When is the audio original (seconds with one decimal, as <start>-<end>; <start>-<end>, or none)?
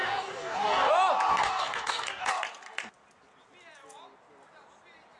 0.9-1.3; 2.3-5.2